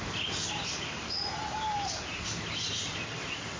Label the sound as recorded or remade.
recorded